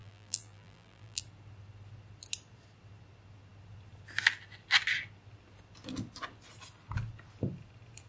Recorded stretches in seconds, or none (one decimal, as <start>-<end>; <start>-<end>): 1.2-8.1